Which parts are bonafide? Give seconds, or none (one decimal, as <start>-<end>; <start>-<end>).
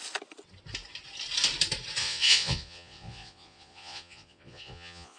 0.0-2.0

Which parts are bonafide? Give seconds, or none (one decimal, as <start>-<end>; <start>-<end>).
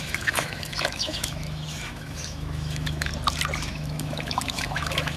3.1-3.7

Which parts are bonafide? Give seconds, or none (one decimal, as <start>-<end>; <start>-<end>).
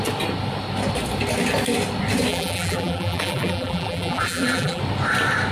0.0-2.3; 4.8-5.5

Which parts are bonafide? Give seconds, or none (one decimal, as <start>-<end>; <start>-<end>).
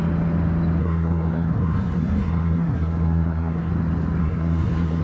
0.0-0.8; 3.7-4.2